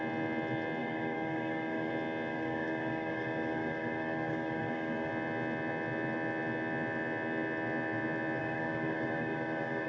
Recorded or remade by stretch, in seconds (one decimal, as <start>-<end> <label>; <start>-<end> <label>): 0.0-0.8 recorded; 0.8-1.9 remade; 1.9-2.3 recorded; 2.3-5.1 remade; 5.1-8.4 recorded; 8.4-9.9 remade